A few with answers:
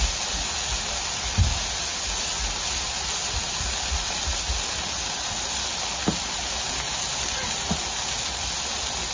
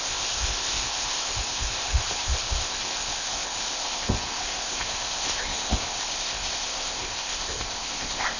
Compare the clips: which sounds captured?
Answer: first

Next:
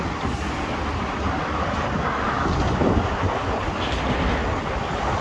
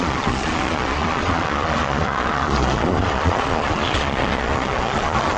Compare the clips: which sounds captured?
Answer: first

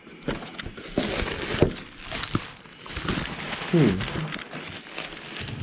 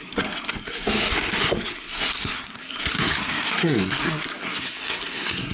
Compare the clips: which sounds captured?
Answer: first